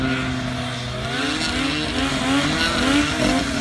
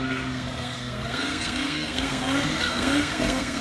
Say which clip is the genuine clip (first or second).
first